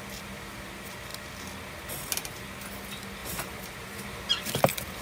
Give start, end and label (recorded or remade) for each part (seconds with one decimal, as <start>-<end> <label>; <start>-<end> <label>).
0.0-3.2 recorded; 3.2-4.3 remade; 4.3-5.0 recorded